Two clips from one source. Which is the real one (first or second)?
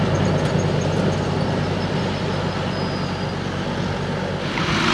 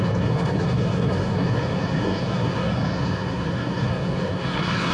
first